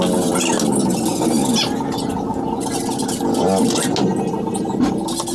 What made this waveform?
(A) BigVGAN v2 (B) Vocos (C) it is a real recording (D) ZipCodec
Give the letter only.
C